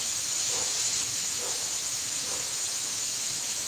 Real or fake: fake